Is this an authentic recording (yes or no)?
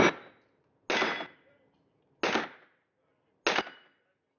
yes